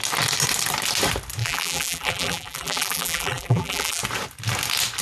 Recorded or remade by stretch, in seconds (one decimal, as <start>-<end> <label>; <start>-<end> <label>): 0.0-1.4 recorded; 1.4-4.0 remade; 4.0-5.0 recorded